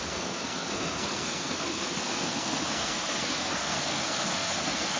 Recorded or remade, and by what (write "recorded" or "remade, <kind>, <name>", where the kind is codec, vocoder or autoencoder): remade, codec, SNAC